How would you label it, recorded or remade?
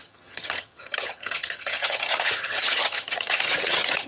remade